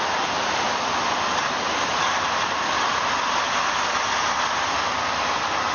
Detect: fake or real real